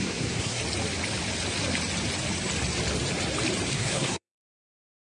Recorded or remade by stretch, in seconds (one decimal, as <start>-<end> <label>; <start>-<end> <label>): 0.0-0.6 remade; 0.6-3.7 recorded; 3.7-5.1 remade